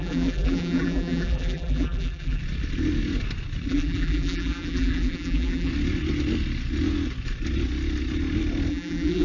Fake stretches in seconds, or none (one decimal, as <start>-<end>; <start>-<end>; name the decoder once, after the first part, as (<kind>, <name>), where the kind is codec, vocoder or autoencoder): 0.0-2.4 (vocoder, BigVGAN v2); 3.7-5.7; 8.7-9.2